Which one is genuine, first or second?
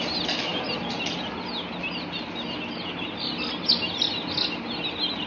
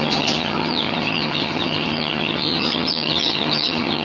first